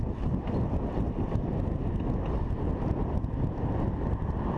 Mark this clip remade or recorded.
recorded